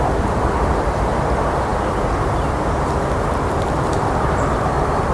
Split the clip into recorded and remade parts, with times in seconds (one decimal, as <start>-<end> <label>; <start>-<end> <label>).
0.0-1.7 remade; 1.7-3.6 recorded; 3.6-5.1 remade